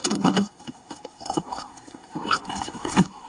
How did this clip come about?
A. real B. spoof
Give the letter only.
B